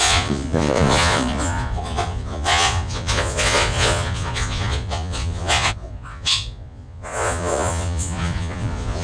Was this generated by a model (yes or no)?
yes